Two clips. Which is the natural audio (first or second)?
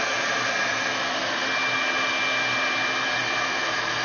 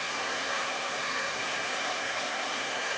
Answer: first